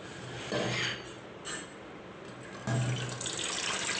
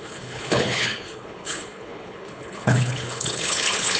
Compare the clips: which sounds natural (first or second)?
first